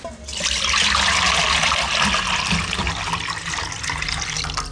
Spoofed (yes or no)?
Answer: no